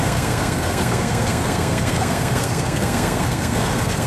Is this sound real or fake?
fake